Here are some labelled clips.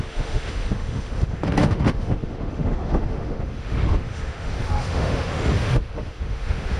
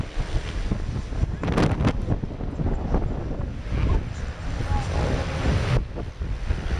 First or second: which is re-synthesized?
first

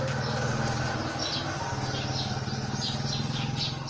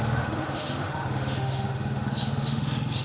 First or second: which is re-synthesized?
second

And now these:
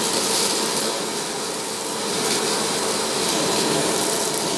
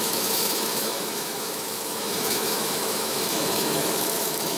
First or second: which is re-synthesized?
second